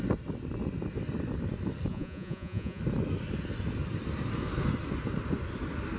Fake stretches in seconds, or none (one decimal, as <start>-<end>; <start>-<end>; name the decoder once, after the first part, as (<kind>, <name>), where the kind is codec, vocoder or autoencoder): 1.9-2.8 (vocoder, Vocos)

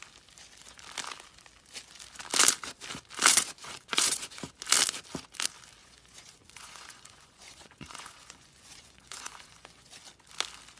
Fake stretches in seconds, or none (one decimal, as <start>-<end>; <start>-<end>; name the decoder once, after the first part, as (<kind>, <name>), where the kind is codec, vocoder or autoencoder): 3.3-4.4 (vocoder, Vocos); 5.8-9.9

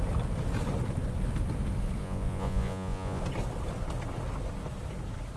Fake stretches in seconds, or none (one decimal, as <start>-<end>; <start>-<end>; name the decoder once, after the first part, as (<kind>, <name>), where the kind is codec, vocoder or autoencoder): 2.0-3.2 (vocoder, Vocos)

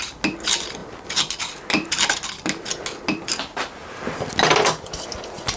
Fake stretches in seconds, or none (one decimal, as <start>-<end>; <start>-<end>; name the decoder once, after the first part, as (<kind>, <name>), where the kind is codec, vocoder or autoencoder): none

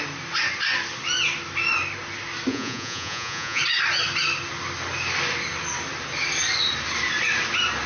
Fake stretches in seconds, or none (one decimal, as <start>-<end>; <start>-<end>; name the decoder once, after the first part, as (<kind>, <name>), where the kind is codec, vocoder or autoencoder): 2.5-3.6 (vocoder, Vocos)

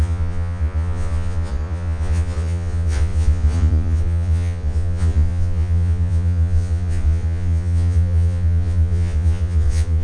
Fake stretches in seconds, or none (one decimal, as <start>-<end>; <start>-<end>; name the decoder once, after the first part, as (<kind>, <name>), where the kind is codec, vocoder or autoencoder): 0.0-10.0 (vocoder, Vocos)

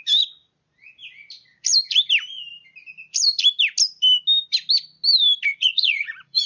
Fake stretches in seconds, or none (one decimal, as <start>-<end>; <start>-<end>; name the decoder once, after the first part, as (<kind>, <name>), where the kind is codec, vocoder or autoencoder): 5.5-6.5 (vocoder, Vocos)